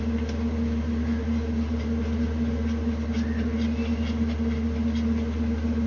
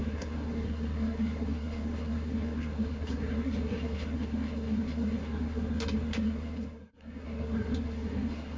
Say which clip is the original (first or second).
first